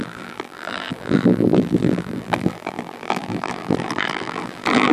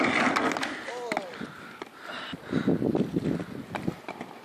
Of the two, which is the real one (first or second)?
second